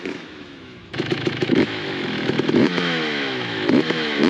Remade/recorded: remade